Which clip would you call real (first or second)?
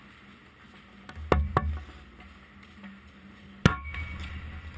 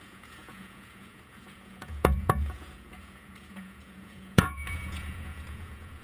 first